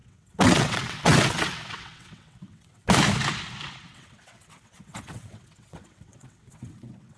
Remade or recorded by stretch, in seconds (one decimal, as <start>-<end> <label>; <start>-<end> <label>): 0.0-2.8 remade; 2.8-3.9 recorded; 3.9-7.2 remade